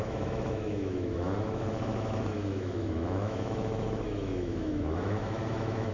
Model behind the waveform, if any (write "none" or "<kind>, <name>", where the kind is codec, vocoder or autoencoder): autoencoder, DAC-VAE